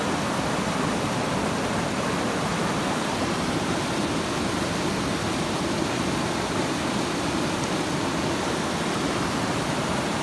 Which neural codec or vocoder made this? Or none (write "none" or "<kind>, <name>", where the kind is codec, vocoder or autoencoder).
none